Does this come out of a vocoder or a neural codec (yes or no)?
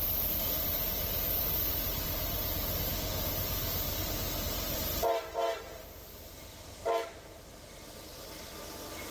no